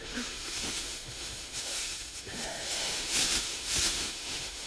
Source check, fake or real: fake